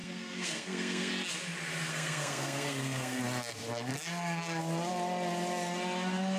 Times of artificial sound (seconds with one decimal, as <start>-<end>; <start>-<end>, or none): 0.0-1.1; 1.9-3.2; 3.9-4.6